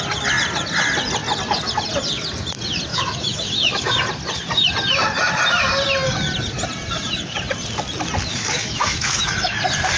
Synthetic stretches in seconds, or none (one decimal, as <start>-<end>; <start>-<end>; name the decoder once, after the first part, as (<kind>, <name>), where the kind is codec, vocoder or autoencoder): 2.9-4.0 (autoencoder, DAC-VAE); 8.3-9.6